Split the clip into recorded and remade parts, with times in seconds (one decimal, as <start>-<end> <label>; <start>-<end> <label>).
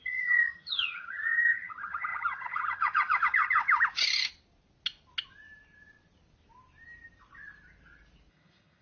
0.0-3.6 remade; 3.6-8.3 recorded; 8.3-8.8 remade